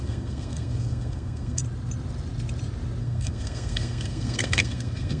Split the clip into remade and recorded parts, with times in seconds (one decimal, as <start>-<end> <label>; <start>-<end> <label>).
0.0-1.6 remade; 1.6-3.0 recorded; 3.0-5.2 remade